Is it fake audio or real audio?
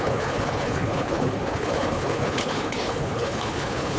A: fake